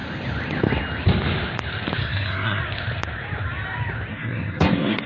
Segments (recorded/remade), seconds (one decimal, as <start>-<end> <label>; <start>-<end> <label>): 0.0-2.0 recorded; 2.0-2.6 remade; 2.6-4.1 recorded; 4.1-5.1 remade